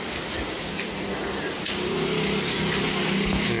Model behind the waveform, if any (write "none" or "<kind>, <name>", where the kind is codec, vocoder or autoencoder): none